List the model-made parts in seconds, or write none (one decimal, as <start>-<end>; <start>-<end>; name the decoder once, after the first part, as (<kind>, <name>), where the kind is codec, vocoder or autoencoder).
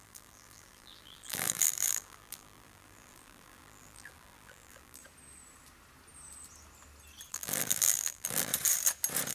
0.0-5.0 (vocoder, BigVGAN v2); 7.3-8.5